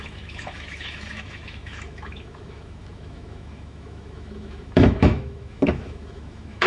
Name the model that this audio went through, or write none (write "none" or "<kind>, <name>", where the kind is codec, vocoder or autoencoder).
autoencoder, DAC-VAE